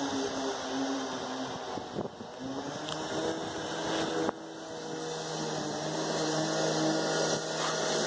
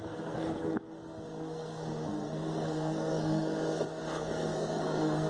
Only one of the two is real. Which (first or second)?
first